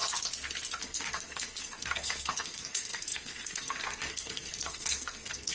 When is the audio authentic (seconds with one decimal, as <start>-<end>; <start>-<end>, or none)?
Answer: 0.0-0.8